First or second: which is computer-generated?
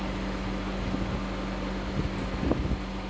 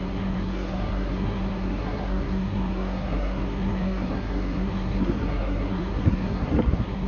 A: second